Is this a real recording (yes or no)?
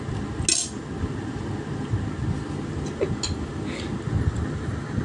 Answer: yes